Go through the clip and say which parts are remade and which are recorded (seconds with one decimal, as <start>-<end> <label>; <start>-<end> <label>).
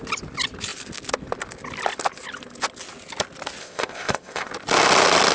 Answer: 0.0-3.6 recorded; 3.6-4.5 remade; 4.5-5.3 recorded